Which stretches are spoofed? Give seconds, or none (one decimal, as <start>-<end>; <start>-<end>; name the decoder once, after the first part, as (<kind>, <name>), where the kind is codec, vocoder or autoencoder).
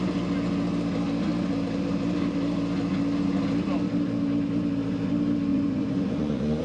5.5-6.6 (vocoder, Vocos)